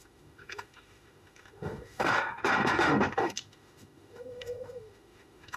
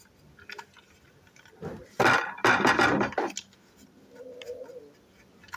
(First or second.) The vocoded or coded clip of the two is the first